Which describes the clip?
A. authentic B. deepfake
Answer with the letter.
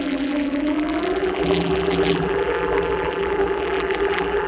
B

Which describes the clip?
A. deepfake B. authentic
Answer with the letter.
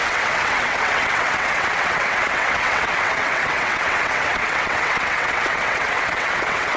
A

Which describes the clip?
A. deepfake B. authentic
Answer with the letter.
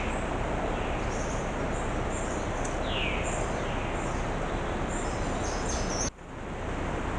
B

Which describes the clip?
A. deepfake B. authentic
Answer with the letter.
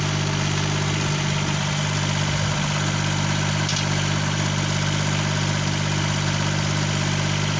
B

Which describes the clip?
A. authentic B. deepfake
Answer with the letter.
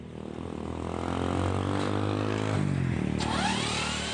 A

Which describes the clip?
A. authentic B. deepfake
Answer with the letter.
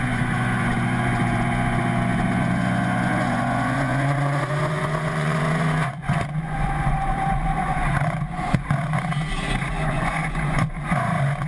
B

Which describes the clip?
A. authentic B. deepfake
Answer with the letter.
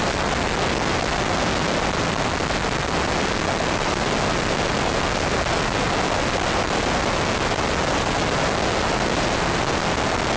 A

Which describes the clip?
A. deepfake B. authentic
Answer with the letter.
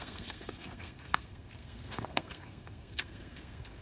A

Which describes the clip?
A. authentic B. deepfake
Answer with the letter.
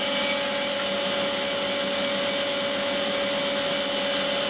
A